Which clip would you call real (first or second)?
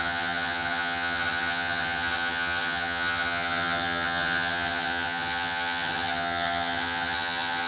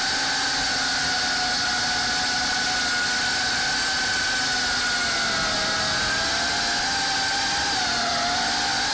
second